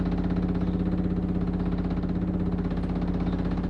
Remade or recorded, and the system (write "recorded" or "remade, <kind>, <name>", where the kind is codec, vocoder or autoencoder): recorded